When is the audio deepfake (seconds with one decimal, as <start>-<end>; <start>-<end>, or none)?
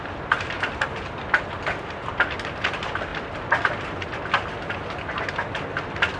3.1-4.2